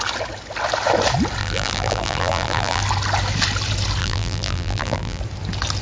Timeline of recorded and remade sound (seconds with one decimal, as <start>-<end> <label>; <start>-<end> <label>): 0.0-1.4 recorded; 1.4-2.8 remade; 2.8-4.0 recorded; 4.0-5.2 remade; 5.2-5.8 recorded